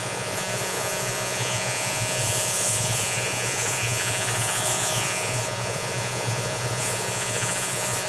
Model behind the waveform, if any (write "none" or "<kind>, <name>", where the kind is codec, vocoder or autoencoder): vocoder, Vocos